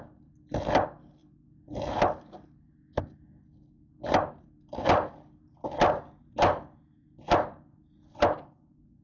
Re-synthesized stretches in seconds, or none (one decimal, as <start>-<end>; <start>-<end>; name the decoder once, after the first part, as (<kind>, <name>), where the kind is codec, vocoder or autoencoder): none